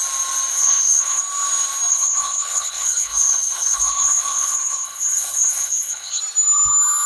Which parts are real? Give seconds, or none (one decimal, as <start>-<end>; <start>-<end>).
0.0-0.5; 1.2-1.9; 6.2-7.1